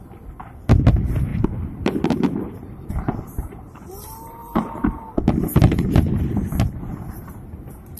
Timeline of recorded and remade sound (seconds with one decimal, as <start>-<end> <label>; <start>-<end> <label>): 0.0-1.3 recorded; 1.3-2.9 remade; 2.9-4.4 recorded; 4.4-5.0 remade; 5.0-8.0 recorded